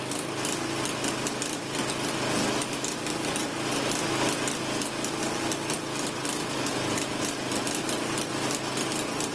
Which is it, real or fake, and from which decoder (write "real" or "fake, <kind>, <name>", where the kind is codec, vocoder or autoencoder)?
real